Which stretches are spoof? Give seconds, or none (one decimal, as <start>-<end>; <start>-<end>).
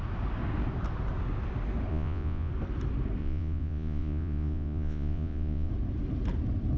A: 1.9-2.5; 3.2-5.7